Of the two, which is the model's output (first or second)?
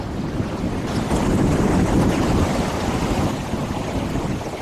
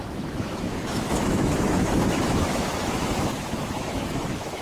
second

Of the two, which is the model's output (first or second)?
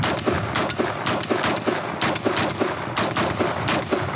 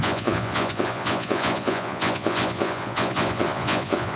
second